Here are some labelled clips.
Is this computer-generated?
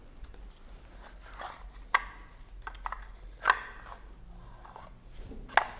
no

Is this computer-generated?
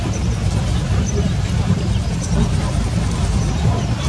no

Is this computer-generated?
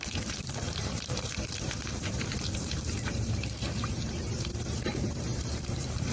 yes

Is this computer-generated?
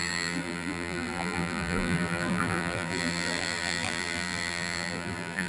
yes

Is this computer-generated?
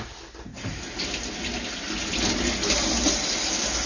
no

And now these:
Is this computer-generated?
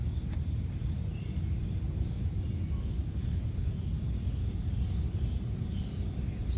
no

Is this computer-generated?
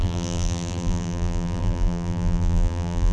yes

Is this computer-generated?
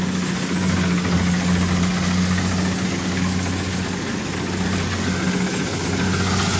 no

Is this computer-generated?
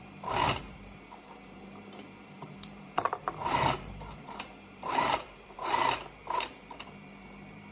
yes